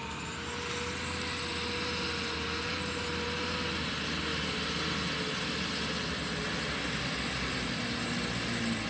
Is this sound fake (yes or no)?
no